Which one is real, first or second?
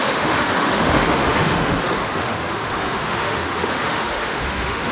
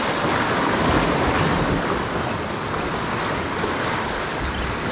second